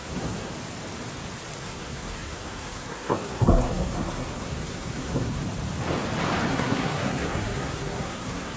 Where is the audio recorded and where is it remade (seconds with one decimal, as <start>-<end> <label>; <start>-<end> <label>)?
0.0-0.5 remade; 0.5-1.6 recorded; 1.6-5.4 remade; 5.4-6.5 recorded; 6.5-8.6 remade